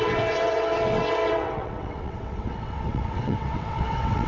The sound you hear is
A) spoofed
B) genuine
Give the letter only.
A